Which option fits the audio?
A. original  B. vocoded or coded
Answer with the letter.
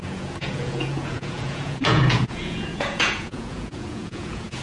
B